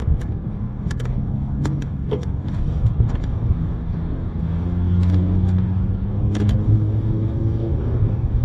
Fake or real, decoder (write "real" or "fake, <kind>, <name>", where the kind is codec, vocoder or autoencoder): fake, codec, DAC